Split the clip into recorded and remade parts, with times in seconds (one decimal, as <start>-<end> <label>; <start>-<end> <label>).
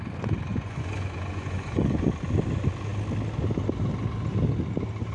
0.0-0.5 recorded; 0.5-2.1 remade; 2.1-5.1 recorded